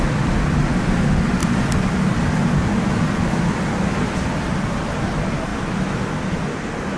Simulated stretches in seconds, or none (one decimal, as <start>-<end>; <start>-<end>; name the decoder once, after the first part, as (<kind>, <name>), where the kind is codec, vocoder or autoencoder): none